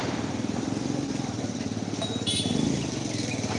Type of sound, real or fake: real